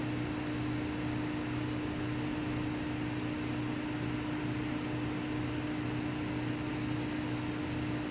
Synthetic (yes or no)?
no